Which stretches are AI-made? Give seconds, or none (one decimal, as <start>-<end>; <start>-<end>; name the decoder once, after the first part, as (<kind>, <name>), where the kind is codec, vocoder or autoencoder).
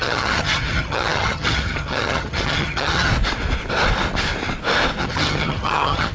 0.0-3.1 (vocoder, HiFi-GAN); 5.0-6.1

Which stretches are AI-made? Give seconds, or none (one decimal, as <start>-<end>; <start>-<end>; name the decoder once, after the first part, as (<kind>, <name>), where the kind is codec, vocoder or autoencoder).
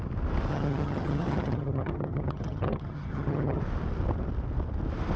0.5-3.6 (vocoder, HiFi-GAN)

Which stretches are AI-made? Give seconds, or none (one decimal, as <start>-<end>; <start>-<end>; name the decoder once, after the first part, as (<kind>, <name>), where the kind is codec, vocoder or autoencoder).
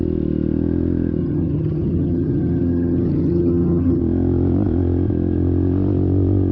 1.2-4.0 (vocoder, HiFi-GAN)